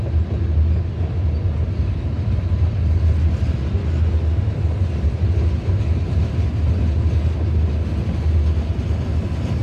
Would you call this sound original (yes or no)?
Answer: yes